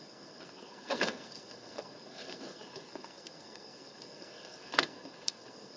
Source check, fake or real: fake